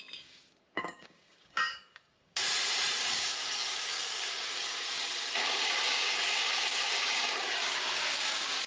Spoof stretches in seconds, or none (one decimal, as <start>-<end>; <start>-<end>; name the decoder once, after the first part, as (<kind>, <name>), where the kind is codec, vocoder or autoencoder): 0.0-2.4 (codec, DAC); 3.0-8.7